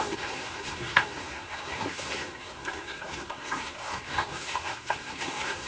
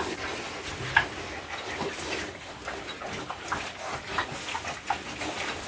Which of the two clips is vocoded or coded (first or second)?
first